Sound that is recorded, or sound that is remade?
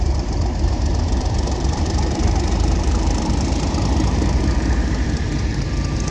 remade